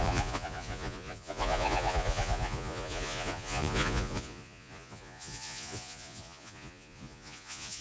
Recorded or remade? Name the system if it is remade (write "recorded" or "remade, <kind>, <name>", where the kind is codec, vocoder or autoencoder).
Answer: remade, vocoder, Vocos